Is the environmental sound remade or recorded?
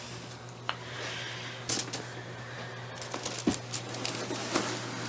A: recorded